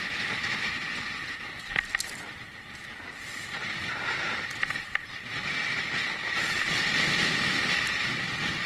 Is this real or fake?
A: real